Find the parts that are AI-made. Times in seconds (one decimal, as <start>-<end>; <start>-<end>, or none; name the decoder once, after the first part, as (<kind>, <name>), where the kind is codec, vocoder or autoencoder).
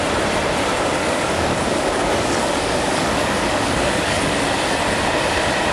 1.0-4.4 (codec, DAC)